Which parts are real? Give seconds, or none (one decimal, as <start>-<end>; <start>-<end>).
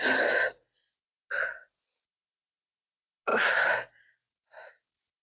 0.0-5.2